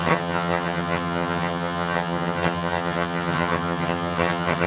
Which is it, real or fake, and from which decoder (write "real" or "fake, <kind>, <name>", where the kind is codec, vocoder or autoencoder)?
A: fake, vocoder, HiFi-GAN